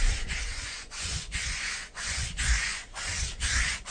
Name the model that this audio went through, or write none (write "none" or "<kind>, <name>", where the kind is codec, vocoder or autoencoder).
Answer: vocoder, Vocos